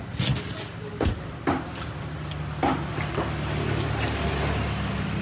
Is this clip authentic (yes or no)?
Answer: yes